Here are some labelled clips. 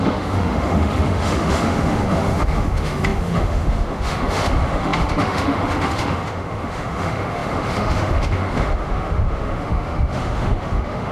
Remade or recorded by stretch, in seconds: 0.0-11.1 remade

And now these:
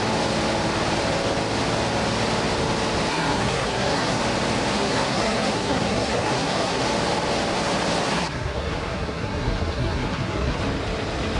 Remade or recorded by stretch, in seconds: 0.0-3.1 recorded; 3.1-4.2 remade; 4.2-4.7 recorded; 4.7-6.8 remade; 6.8-8.1 recorded; 8.1-10.6 remade; 10.6-11.4 recorded

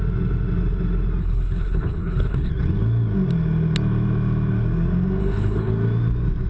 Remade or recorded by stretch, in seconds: 0.0-1.2 recorded; 1.2-2.5 remade; 2.5-5.2 recorded; 5.2-5.7 remade; 5.7-6.5 recorded